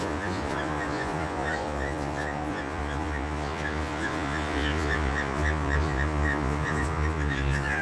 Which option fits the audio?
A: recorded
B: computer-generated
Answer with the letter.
B